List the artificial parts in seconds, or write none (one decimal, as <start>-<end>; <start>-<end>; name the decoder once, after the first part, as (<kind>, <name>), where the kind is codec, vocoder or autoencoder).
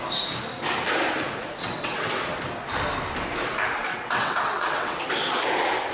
1.6-2.1 (vocoder, WaveNeXt); 3.9-5.0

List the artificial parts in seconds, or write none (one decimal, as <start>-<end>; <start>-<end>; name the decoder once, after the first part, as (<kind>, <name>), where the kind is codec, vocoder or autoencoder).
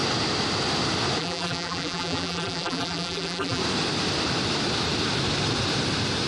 1.2-3.6 (vocoder, BigVGAN v2)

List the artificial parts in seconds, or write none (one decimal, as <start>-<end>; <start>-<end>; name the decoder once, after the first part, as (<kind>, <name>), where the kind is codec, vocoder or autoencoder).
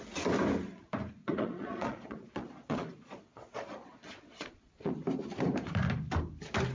1.2-4.9 (vocoder, Vocos)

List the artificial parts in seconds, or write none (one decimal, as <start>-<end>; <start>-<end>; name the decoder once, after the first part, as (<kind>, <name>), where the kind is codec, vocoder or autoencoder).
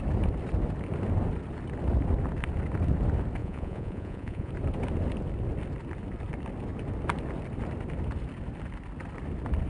3.4-4.5 (vocoder, Vocos)